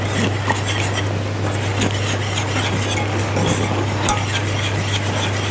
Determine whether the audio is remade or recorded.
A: recorded